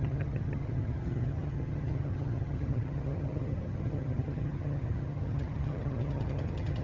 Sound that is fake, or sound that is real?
fake